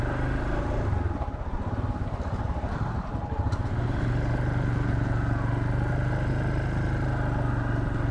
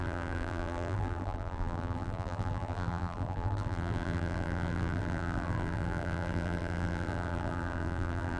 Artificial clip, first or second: second